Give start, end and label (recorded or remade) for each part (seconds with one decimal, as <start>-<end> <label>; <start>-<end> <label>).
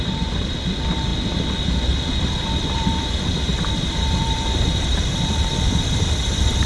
0.0-1.1 remade; 1.1-2.2 recorded; 2.2-6.7 remade